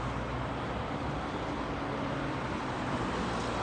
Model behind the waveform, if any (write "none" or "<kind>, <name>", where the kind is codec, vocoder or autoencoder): none